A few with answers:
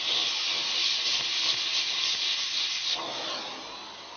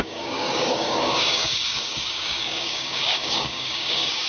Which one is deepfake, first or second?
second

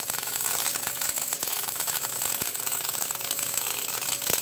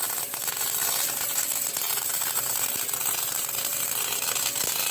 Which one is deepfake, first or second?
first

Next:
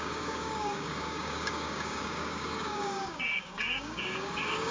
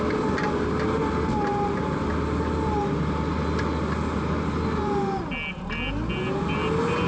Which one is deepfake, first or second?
first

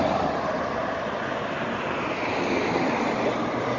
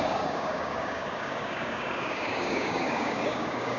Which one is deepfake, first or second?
second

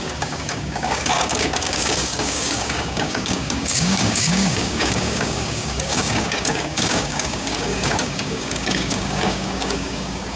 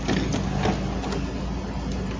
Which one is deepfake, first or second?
first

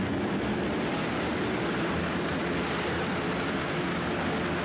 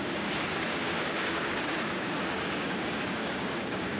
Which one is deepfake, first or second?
second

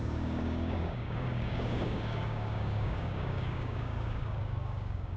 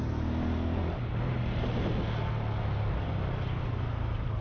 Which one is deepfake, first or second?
first